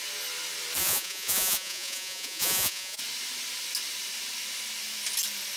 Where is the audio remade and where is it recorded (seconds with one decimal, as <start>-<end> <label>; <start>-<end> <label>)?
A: 0.0-0.8 recorded; 0.8-3.0 remade; 3.0-5.6 recorded